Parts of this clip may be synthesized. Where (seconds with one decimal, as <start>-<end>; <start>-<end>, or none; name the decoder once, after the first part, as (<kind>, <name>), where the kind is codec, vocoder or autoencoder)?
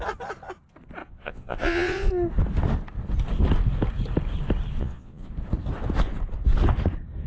1.0-2.1 (vocoder, Vocos); 4.8-5.3